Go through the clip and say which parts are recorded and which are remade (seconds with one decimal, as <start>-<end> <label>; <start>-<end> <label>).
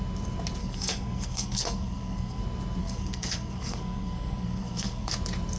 0.0-0.6 recorded; 0.6-2.4 remade; 2.4-2.8 recorded; 2.8-5.1 remade; 5.1-5.6 recorded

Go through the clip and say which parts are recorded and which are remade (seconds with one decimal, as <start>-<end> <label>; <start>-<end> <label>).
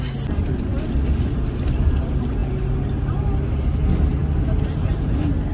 0.0-5.5 recorded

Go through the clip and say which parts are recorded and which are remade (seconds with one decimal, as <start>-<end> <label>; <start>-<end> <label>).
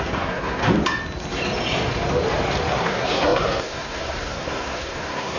0.0-0.6 remade; 0.6-2.7 recorded; 2.7-5.4 remade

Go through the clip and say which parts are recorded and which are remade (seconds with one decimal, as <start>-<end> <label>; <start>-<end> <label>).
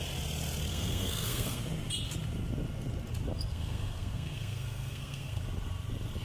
0.0-0.7 recorded; 0.7-1.6 remade; 1.6-3.5 recorded; 3.5-5.4 remade; 5.4-6.2 recorded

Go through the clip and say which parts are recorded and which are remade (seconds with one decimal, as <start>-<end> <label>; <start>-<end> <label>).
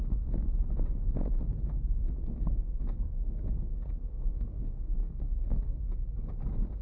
0.0-1.7 recorded; 1.7-5.8 remade; 5.8-6.8 recorded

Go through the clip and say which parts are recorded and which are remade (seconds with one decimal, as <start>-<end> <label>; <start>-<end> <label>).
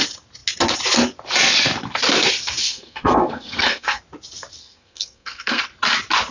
0.0-2.6 recorded; 2.6-4.0 remade; 4.0-4.6 recorded; 4.6-5.6 remade; 5.6-6.3 recorded